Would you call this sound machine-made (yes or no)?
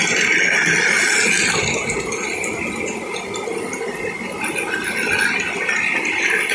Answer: no